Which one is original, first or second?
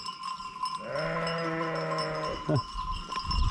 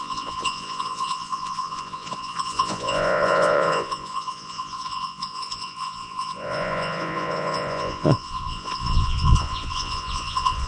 first